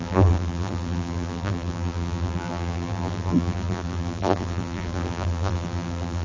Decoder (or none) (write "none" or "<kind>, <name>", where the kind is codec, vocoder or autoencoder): vocoder, BigVGAN v2